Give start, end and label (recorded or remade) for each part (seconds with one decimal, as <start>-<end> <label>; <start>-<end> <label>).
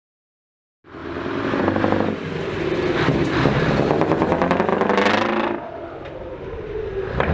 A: 0.0-7.3 recorded